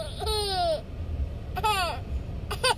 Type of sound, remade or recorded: recorded